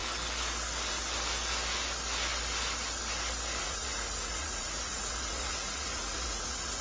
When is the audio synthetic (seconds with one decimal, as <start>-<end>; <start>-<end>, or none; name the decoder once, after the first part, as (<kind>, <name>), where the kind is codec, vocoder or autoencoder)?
3.6-6.8 (vocoder, Vocos)